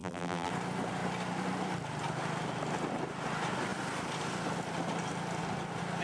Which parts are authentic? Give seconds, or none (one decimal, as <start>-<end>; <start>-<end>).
0.5-6.0